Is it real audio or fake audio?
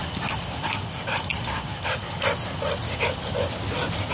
real